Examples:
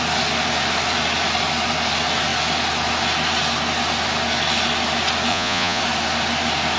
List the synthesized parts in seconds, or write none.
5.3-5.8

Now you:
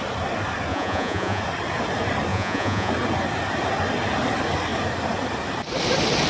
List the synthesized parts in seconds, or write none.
0.7-1.4; 2.3-2.9

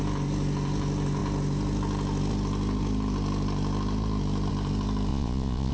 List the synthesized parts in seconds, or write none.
5.1-5.7

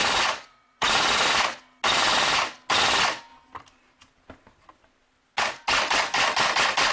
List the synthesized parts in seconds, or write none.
0.0-1.3